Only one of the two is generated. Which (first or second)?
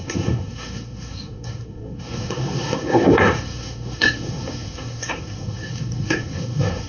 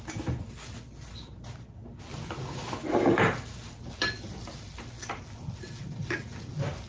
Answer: first